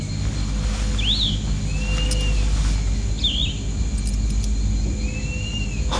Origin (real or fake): real